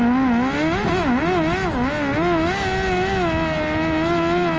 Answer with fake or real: real